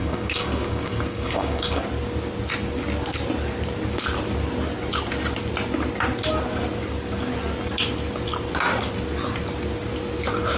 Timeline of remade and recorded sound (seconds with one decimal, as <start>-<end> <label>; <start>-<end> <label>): 0.0-1.8 remade; 1.8-10.6 recorded